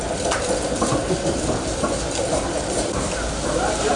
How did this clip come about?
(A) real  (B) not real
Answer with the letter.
A